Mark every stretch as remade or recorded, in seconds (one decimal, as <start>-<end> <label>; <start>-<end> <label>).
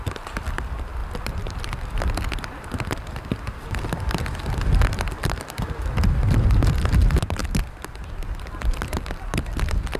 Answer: 0.0-10.0 recorded